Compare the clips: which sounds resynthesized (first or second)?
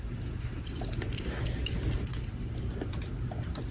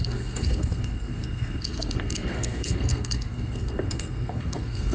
second